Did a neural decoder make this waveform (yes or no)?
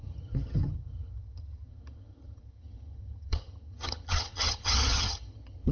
yes